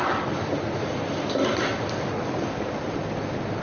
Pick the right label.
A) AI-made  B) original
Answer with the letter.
B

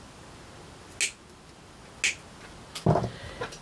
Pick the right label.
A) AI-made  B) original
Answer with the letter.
B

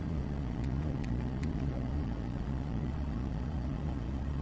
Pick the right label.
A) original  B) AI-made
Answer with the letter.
B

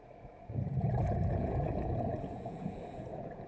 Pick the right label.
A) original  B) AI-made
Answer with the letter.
B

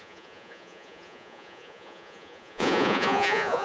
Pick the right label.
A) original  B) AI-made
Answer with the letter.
B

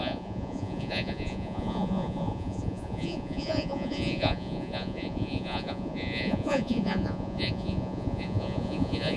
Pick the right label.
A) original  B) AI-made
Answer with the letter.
B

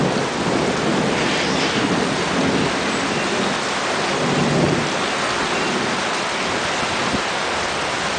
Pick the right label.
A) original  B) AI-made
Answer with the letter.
A